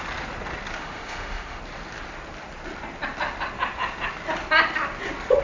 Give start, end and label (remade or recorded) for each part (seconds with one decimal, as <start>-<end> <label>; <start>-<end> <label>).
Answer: 0.0-0.8 recorded; 0.8-1.6 remade; 1.6-5.4 recorded